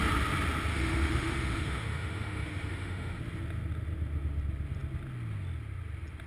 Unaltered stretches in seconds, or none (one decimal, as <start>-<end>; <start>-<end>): 0.0-0.7; 3.2-6.3